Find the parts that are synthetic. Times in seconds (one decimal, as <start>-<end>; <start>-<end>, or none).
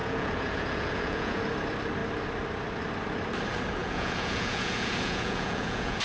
0.0-1.4; 3.8-6.0